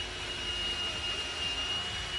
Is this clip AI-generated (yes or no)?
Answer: no